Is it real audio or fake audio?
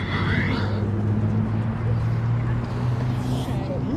real